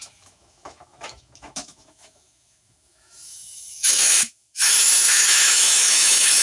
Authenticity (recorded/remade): remade